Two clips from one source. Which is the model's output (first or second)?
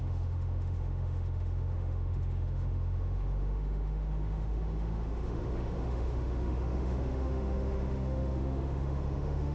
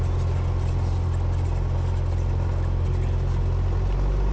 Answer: first